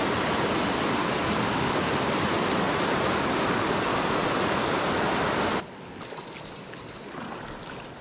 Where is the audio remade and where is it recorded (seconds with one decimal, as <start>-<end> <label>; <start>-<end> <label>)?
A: 0.0-8.0 recorded

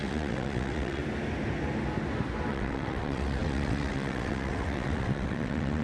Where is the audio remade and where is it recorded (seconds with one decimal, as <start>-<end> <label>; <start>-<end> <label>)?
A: 0.0-1.0 remade; 1.0-2.5 recorded; 2.5-5.8 remade

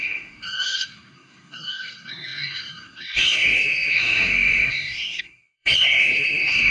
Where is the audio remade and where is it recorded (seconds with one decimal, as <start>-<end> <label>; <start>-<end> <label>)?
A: 0.0-6.7 remade

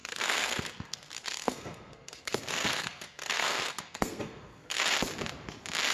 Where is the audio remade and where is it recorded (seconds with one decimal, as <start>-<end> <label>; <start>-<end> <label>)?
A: 0.0-4.8 remade; 4.8-5.9 recorded